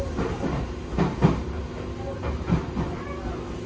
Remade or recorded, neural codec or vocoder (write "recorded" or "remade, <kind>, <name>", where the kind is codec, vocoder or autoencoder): recorded